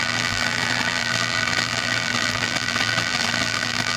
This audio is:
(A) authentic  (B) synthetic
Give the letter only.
B